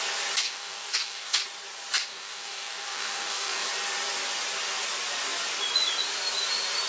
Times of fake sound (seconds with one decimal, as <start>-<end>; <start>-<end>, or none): 0.4-1.4; 2.1-3.7